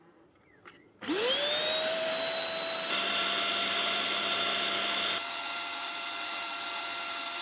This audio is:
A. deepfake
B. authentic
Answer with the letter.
A